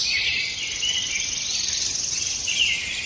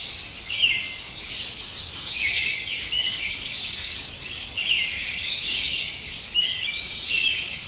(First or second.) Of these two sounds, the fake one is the second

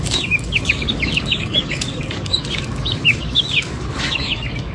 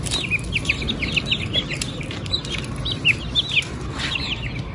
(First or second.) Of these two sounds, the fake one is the first